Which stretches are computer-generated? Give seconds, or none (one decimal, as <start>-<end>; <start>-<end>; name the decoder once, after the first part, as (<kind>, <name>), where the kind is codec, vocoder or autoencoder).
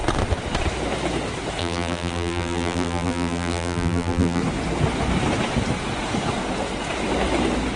1.6-4.4 (vocoder, BigVGAN v2)